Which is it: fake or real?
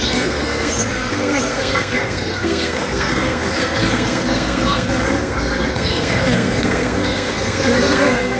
fake